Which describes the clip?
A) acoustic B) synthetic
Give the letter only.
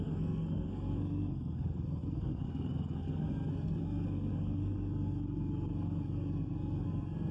B